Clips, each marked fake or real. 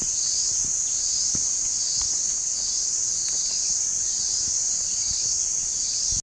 real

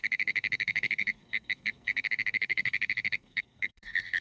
fake